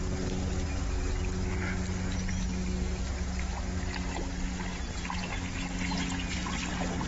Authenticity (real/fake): real